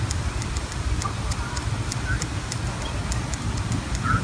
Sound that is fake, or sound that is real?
real